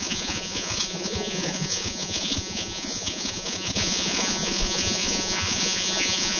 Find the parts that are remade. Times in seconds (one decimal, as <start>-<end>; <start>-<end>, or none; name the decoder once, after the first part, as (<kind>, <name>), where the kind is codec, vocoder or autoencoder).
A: 0.0-6.4 (vocoder, Vocos)

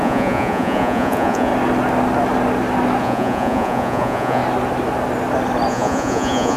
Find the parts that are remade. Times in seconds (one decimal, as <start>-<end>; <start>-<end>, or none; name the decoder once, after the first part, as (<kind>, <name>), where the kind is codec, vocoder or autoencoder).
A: 0.0-1.5 (vocoder, Vocos); 3.0-4.4; 5.7-6.6

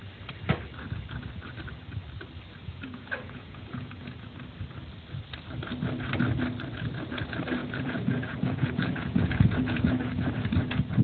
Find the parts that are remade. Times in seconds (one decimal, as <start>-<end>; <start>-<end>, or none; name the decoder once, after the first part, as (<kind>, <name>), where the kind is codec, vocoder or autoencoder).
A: 2.6-4.3 (vocoder, Vocos); 7.6-10.3

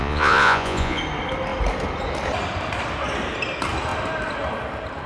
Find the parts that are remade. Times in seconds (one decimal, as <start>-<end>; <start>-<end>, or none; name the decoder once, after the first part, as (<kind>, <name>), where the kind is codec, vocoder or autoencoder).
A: 0.0-1.0 (vocoder, Vocos)

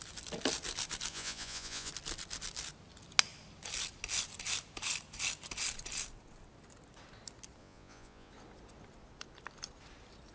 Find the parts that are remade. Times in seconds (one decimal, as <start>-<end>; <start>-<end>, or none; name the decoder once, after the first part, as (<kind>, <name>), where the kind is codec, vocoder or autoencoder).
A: 1.1-1.9 (vocoder, Vocos); 7.6-8.3